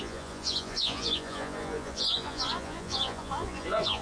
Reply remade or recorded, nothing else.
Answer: remade